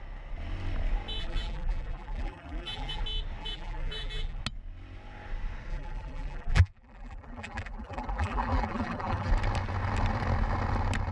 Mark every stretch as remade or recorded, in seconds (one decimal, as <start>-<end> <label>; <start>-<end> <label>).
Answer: 0.0-1.2 recorded; 1.2-3.0 remade; 3.0-3.4 recorded; 3.4-4.4 remade; 4.4-5.7 recorded; 5.7-9.3 remade; 9.3-11.1 recorded